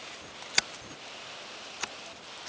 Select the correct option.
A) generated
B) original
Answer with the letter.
B